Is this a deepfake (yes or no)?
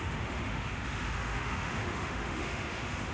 yes